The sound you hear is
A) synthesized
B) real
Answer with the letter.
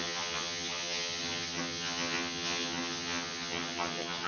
A